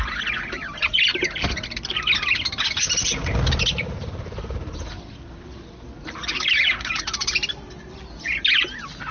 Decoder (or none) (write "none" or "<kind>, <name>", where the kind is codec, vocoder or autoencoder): none